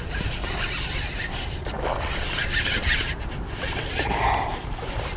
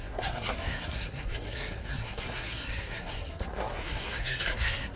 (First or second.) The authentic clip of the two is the first